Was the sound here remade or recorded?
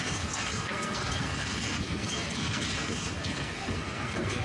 remade